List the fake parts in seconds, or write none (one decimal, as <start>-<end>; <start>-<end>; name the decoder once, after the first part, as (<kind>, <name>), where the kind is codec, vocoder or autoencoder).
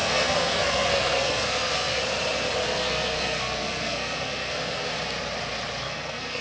0.0-2.0 (codec, SNAC); 2.6-4.9; 5.8-6.4